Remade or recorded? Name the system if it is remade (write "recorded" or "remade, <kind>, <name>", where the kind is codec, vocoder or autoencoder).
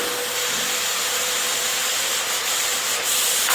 recorded